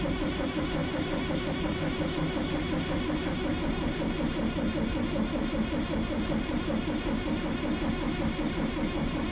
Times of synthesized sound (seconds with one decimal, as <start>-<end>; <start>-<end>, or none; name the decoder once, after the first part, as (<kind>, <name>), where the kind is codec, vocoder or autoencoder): none